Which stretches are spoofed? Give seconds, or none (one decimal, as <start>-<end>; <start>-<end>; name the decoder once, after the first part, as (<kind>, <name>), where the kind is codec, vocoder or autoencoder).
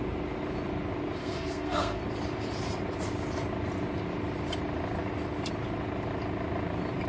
1.2-2.0 (codec, SNAC)